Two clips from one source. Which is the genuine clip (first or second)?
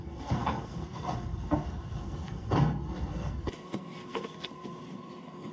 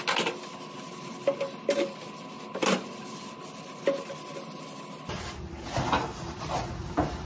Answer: second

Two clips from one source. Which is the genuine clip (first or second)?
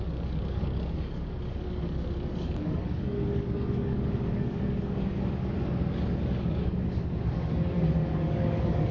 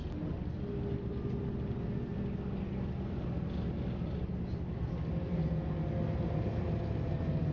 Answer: second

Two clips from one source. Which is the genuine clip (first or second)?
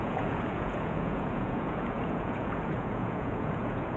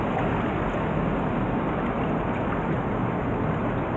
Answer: second